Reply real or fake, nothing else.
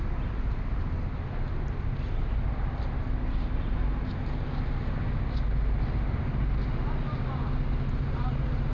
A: real